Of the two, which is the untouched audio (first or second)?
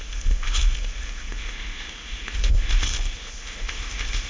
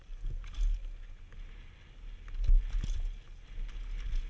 second